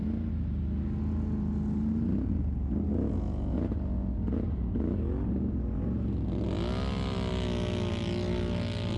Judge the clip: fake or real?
real